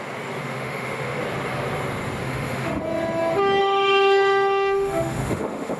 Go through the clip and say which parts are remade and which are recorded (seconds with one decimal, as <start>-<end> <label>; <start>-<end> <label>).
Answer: 0.0-0.4 recorded; 0.4-1.2 remade; 1.2-2.2 recorded; 2.2-2.8 remade; 2.8-3.6 recorded; 3.6-5.8 remade